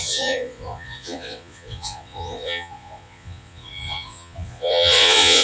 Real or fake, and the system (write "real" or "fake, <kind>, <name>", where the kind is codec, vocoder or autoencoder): fake, vocoder, Vocos